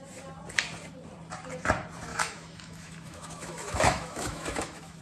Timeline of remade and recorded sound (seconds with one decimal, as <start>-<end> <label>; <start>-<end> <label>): 0.0-2.1 recorded; 2.1-5.0 remade